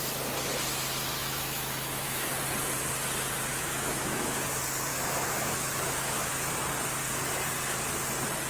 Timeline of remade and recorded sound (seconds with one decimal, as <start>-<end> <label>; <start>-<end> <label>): 0.0-1.2 recorded; 1.2-2.3 remade; 2.3-3.5 recorded; 3.5-4.4 remade; 4.4-4.9 recorded; 4.9-6.3 remade; 6.3-8.5 recorded